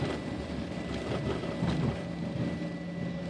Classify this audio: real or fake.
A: real